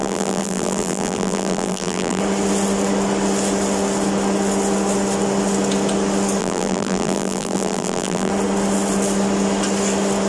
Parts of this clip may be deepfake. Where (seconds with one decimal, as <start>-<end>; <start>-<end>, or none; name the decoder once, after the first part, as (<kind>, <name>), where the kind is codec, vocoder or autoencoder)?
0.0-2.2 (vocoder, BigVGAN v2); 6.4-8.3